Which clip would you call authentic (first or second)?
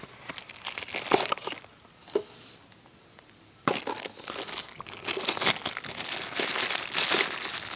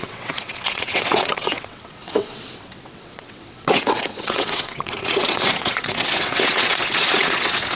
first